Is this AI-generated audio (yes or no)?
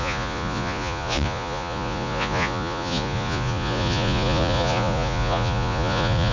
yes